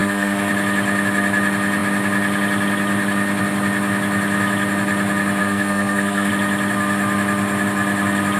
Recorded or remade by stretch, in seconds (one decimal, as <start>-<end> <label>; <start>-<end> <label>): 0.0-0.5 remade; 0.5-5.4 recorded; 5.4-6.3 remade; 6.3-8.4 recorded